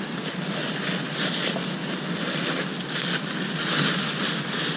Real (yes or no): yes